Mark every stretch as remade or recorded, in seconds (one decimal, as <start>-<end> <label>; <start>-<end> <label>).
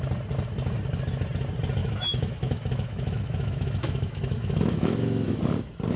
0.0-1.8 recorded; 1.8-5.4 remade; 5.4-6.0 recorded